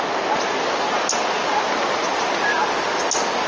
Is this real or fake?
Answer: real